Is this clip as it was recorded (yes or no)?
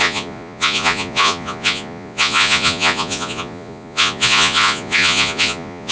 no